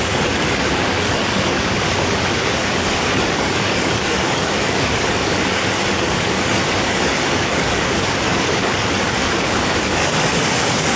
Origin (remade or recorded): remade